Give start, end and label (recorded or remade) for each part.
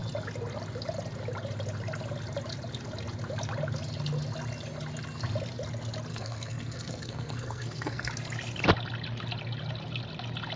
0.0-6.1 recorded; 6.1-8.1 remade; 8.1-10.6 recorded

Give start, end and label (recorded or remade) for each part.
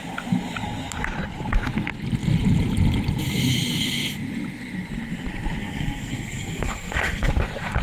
0.0-5.6 recorded; 5.6-7.3 remade; 7.3-7.8 recorded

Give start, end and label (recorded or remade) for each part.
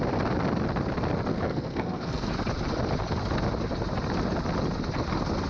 0.0-1.3 recorded; 1.3-2.3 remade; 2.3-5.5 recorded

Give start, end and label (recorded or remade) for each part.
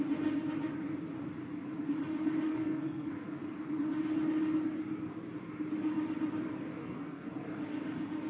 0.0-2.5 recorded; 2.5-3.1 remade; 3.1-6.8 recorded; 6.8-7.3 remade; 7.3-8.3 recorded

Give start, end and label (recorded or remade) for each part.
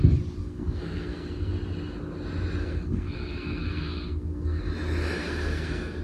0.0-0.4 recorded; 0.4-1.5 remade; 1.5-2.6 recorded; 2.6-4.7 remade; 4.7-5.2 recorded; 5.2-6.0 remade